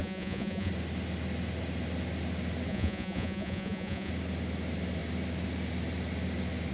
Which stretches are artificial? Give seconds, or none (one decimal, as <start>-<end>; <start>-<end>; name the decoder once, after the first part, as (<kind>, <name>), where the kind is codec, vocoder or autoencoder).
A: 0.0-0.7 (vocoder, Vocos); 2.7-4.1